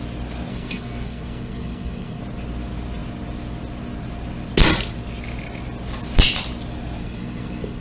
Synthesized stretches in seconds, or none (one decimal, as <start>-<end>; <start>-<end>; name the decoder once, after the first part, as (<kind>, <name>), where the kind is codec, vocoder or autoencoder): 0.5-2.2 (codec, SNAC); 7.0-7.8